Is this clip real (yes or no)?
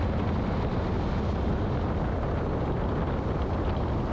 yes